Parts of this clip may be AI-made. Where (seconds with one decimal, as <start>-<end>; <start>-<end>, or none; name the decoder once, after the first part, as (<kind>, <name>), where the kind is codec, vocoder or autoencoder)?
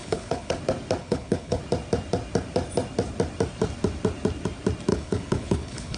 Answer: 0.0-0.6 (codec, HILCodec); 1.0-1.6; 4.9-6.0